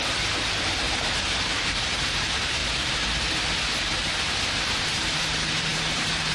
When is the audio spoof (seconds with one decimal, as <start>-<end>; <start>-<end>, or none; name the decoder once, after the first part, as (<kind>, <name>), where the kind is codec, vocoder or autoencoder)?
0.0-2.6 (vocoder, BigVGAN v2); 3.3-6.3